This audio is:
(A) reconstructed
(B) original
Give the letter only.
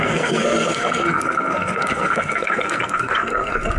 A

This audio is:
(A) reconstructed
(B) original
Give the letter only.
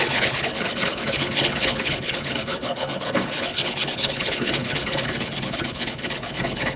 A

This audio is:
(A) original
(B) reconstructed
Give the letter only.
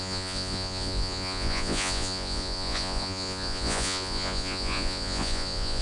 B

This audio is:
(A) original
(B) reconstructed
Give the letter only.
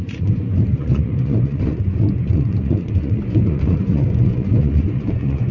B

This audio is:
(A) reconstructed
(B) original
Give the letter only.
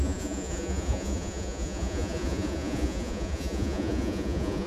A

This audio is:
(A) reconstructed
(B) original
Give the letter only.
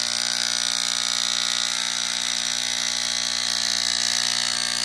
B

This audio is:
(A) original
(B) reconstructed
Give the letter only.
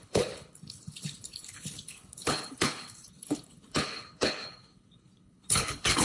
B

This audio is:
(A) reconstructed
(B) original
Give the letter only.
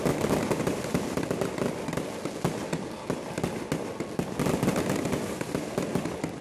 B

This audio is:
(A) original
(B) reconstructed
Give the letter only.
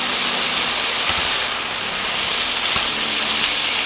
A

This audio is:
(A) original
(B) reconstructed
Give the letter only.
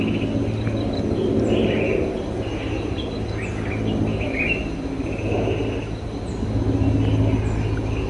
A